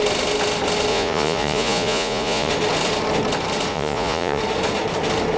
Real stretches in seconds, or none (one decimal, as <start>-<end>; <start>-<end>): 0.0-0.9; 2.5-3.7; 4.4-5.4